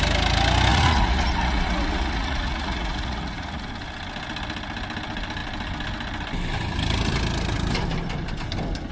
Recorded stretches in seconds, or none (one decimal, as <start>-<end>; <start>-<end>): 0.0-0.7; 3.6-8.9